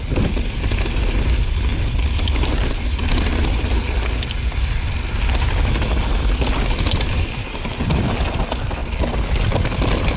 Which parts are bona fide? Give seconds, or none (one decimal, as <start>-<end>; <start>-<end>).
0.0-10.2